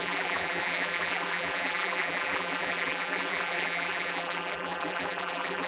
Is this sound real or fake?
fake